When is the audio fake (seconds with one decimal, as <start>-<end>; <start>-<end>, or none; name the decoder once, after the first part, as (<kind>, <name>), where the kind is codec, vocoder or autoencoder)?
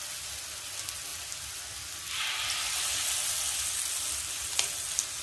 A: none